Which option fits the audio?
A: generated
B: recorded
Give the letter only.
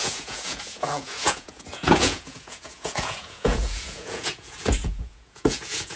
A